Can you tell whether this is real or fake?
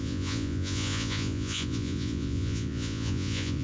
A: fake